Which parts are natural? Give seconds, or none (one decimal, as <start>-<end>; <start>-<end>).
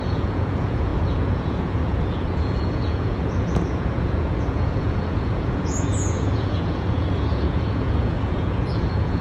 none